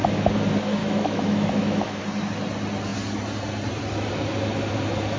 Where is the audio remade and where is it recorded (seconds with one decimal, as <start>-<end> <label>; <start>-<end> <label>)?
0.0-0.8 recorded; 0.8-2.0 remade; 2.0-5.2 recorded